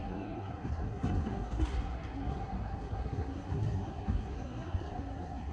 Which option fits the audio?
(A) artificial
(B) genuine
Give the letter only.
A